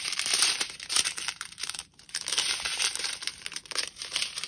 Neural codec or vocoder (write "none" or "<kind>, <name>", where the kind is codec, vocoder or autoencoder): vocoder, BigVGAN v2